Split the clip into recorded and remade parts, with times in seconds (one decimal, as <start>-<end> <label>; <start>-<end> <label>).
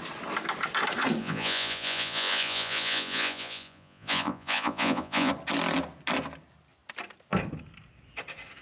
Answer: 0.0-1.2 recorded; 1.2-5.3 remade; 5.3-8.6 recorded